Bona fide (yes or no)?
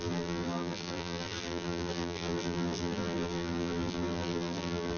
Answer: no